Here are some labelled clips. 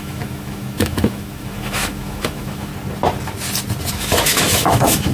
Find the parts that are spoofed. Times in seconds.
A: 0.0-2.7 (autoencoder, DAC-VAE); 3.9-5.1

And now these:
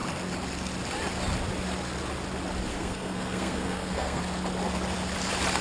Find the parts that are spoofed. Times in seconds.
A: 2.7-4.2 (codec, SNAC)

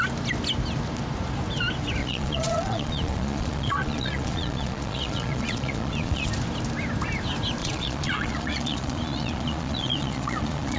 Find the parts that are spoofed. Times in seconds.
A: 2.0-6.3 (vocoder, Vocos); 7.6-10.8

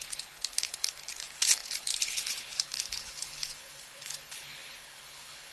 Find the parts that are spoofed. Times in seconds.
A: 0.0-5.5 (codec, HILCodec)

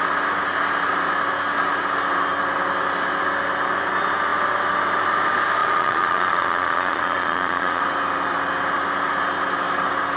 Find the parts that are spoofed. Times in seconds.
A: 5.6-7.8 (vocoder, Vocos)